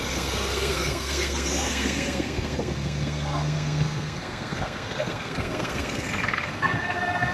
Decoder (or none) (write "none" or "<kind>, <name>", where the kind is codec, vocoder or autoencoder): codec, SNAC